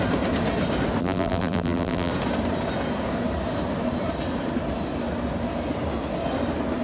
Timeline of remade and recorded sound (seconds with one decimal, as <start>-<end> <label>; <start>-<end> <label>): 0.0-1.0 recorded; 1.0-2.1 remade; 2.1-6.8 recorded